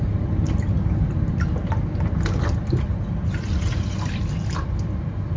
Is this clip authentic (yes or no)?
yes